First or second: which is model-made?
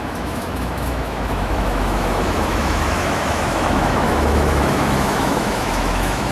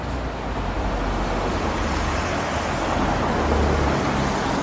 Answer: first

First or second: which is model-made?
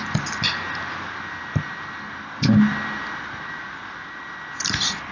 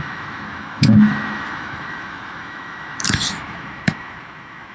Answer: second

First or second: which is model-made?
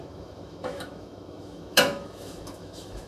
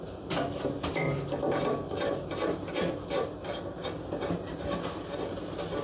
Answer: first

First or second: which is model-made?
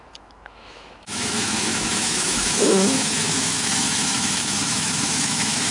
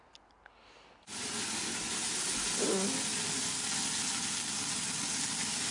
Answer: first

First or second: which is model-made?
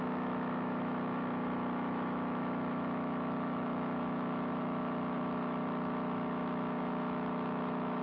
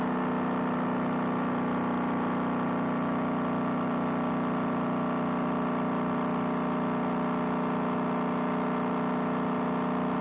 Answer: first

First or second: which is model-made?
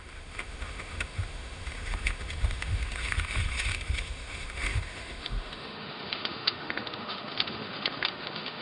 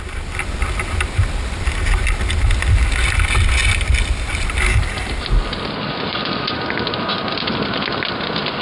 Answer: first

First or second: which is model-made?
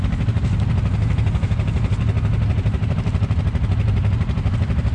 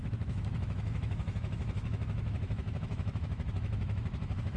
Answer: second